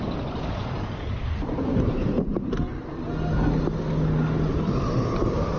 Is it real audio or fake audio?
real